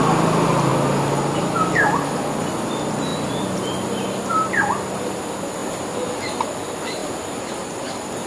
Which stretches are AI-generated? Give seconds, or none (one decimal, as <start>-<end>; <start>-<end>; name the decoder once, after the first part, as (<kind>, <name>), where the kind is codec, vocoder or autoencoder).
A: none

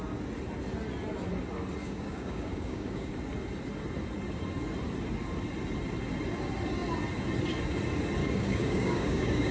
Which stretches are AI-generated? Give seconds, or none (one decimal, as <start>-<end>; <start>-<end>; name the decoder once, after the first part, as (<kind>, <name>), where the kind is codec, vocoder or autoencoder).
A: 1.8-3.1 (codec, DAC); 8.2-9.5

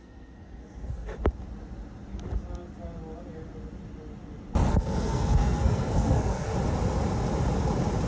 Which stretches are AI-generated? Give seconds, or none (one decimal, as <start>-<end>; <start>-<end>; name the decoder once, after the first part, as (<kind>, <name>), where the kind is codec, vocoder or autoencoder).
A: 0.0-1.2 (codec, SNAC); 4.7-6.5

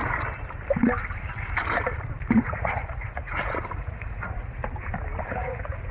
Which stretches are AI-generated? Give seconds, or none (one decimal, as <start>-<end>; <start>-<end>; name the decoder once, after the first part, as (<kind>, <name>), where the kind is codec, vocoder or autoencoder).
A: 2.4-4.6 (vocoder, Vocos); 5.3-5.9

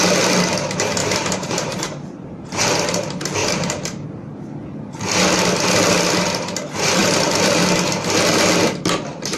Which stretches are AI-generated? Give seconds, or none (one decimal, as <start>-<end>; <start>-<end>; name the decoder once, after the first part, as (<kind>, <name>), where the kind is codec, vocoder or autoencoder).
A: 1.0-2.6 (vocoder, BigVGAN v2); 3.4-4.1; 7.0-7.6

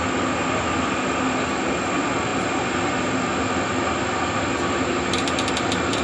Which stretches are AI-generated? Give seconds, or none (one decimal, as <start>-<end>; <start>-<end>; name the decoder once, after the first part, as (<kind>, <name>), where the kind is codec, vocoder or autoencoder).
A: none